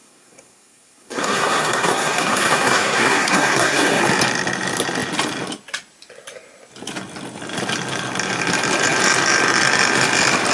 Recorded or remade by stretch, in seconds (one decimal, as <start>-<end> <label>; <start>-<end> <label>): 0.0-4.0 remade; 4.0-10.5 recorded